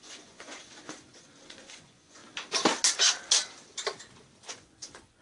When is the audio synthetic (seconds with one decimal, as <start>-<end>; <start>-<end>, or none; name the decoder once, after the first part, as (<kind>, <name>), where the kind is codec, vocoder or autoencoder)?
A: 0.0-2.2 (vocoder, Vocos); 4.5-5.2

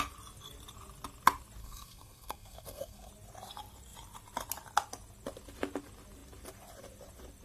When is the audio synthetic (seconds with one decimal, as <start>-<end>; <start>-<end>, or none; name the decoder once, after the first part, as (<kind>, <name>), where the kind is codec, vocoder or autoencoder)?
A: 1.6-3.1 (codec, SNAC)

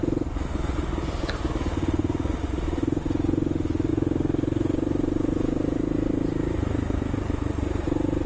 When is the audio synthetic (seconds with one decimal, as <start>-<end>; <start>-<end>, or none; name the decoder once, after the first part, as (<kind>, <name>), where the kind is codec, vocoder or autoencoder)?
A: 3.9-5.7 (vocoder, BigVGAN v2)

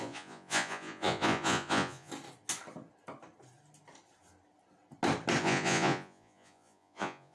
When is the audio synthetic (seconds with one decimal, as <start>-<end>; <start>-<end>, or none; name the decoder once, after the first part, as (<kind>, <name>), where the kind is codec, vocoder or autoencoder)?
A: 0.0-2.1 (vocoder, Vocos); 5.4-7.3

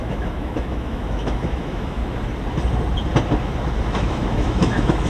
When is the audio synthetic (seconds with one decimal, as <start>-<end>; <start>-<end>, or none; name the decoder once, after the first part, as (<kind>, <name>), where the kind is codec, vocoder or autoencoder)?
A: 0.0-2.0 (autoencoder, DAC-VAE); 3.9-5.1

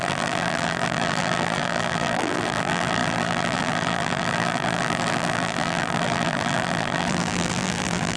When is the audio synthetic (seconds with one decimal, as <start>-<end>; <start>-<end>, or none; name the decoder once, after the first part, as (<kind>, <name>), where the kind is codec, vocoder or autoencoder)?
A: 0.0-8.2 (vocoder, BigVGAN v2)

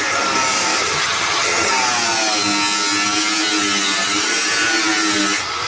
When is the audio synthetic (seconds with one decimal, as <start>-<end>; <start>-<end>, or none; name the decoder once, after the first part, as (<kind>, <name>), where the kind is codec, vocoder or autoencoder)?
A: 0.8-1.7 (vocoder, HiFi-GAN)